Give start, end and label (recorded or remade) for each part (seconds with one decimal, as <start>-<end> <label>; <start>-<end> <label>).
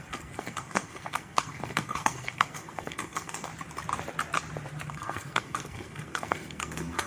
0.0-3.5 remade; 3.5-4.9 recorded; 4.9-7.1 remade